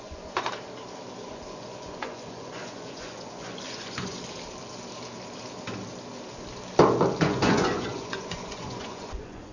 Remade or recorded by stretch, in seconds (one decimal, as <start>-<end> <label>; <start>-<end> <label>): 0.0-0.5 remade; 0.5-1.3 recorded; 1.3-4.2 remade; 4.2-7.2 recorded; 7.2-9.5 remade